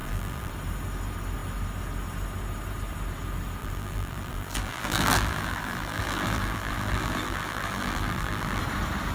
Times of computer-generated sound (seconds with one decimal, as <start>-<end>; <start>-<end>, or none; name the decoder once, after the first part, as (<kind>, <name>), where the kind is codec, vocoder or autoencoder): 0.0-0.5 (vocoder, BigVGAN v2); 3.6-8.6